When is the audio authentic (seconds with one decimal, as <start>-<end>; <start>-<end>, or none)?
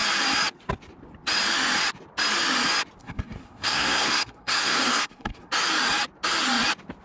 0.0-3.0; 5.5-7.0